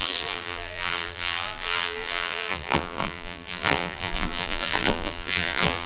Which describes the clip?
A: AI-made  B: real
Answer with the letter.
A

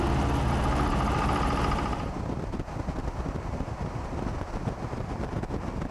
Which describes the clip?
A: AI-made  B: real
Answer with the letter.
B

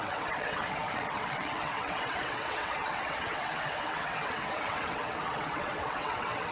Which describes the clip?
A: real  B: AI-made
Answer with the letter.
B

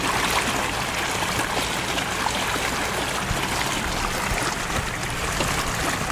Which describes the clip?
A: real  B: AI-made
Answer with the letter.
A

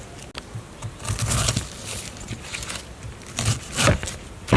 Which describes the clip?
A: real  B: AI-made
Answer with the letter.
A